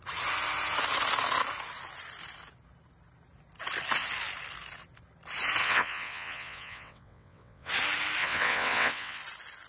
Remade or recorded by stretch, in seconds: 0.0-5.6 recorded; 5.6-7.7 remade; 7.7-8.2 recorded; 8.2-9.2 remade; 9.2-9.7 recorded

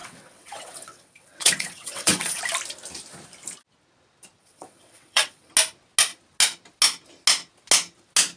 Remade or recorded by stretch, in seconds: 0.0-2.4 remade; 2.4-4.4 recorded; 4.4-5.5 remade; 5.5-8.4 recorded

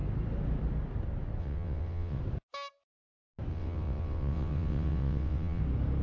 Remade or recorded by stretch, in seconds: 0.0-1.4 recorded; 1.4-2.2 remade; 2.2-3.5 recorded; 3.5-5.6 remade; 5.6-6.0 recorded

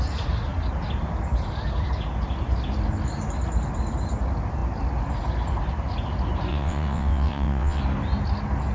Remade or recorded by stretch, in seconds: 0.0-6.5 recorded; 6.5-7.8 remade; 7.8-8.7 recorded